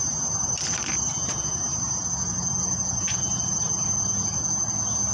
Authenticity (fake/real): real